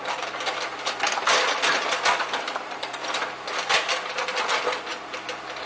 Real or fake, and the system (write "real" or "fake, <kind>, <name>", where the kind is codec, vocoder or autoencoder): real